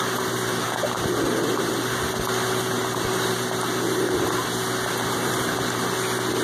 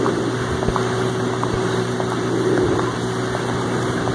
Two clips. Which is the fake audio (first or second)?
second